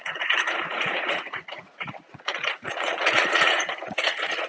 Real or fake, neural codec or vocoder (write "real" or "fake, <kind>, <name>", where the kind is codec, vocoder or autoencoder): fake, vocoder, Vocos